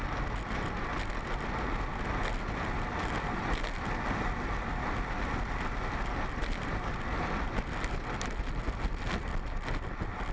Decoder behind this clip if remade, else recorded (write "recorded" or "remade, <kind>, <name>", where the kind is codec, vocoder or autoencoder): recorded